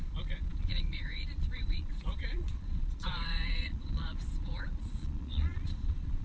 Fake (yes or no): yes